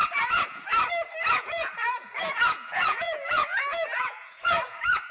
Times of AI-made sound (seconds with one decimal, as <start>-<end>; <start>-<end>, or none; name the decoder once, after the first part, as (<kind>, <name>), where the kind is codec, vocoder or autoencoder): 0.0-0.7 (vocoder, Vocos); 1.3-5.1